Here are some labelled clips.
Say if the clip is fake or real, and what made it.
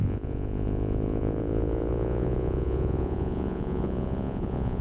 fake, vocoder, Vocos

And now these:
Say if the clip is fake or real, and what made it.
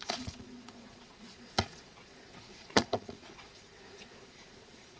fake, vocoder, Vocos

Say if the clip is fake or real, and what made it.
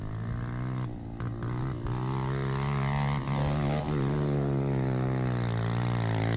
real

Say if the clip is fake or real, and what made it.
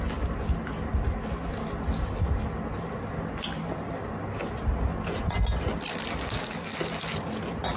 real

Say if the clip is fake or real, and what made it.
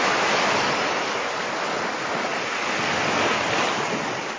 real